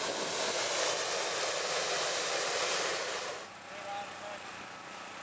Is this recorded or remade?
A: recorded